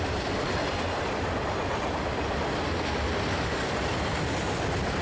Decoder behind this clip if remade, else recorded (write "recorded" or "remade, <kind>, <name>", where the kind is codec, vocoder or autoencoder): recorded